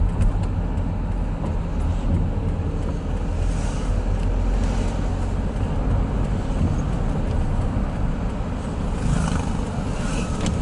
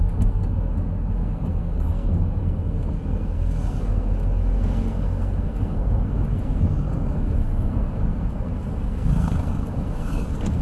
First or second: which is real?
first